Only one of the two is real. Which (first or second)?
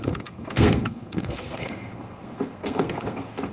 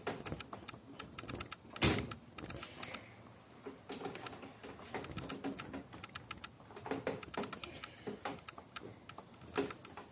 second